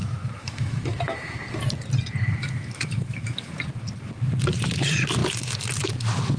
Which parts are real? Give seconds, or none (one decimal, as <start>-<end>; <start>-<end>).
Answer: 1.4-2.4; 3.5-6.4